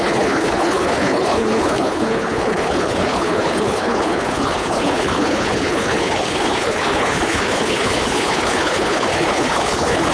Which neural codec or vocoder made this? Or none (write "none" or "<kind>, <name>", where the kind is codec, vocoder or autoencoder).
codec, HILCodec